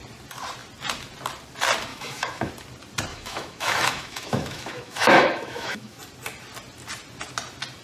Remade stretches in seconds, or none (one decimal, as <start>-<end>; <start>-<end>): 1.9-2.5; 3.1-6.0

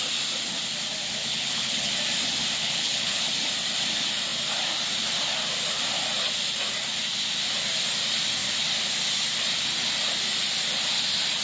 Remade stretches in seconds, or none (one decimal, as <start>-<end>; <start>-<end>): 1.2-1.9; 2.6-3.2

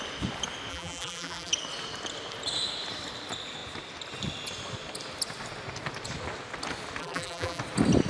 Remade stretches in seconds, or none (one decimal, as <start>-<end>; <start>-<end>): 0.7-1.5; 7.0-7.6

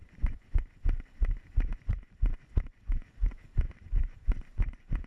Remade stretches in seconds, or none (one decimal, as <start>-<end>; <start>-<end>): 0.0-0.6; 1.7-5.1

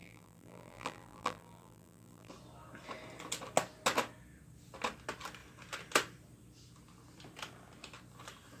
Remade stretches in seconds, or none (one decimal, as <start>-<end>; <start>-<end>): 0.0-2.3